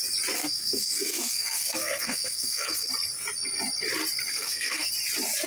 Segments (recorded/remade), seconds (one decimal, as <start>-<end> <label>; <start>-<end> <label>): 0.0-0.4 recorded; 0.4-2.9 remade; 2.9-4.3 recorded; 4.3-4.9 remade; 4.9-5.5 recorded